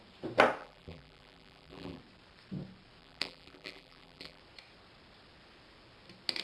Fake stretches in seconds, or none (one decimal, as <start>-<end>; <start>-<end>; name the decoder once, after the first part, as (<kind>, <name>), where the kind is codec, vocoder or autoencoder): 0.6-2.0 (vocoder, BigVGAN v2); 3.0-4.4